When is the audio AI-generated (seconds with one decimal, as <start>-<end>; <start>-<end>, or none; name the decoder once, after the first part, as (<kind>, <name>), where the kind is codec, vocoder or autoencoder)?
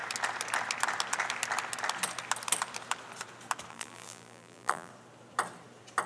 3.7-4.9 (vocoder, BigVGAN v2)